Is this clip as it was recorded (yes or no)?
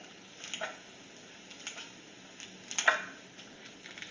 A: yes